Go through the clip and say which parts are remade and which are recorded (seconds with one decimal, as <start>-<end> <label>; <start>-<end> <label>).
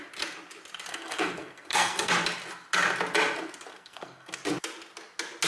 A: 0.0-0.9 recorded; 0.9-2.1 remade; 2.1-3.7 recorded; 3.7-4.4 remade; 4.4-5.5 recorded